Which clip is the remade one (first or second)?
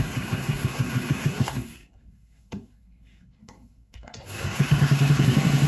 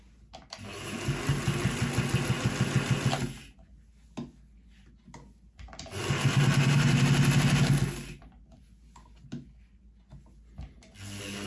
first